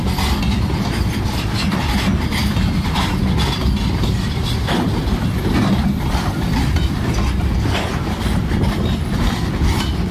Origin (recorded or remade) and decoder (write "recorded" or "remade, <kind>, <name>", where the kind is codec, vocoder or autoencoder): recorded